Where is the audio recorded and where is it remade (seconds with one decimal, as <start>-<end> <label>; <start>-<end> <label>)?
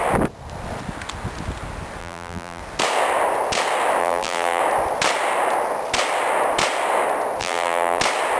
0.0-2.0 recorded; 2.0-2.6 remade; 2.6-4.0 recorded; 4.0-4.6 remade; 4.6-7.4 recorded; 7.4-8.0 remade; 8.0-8.4 recorded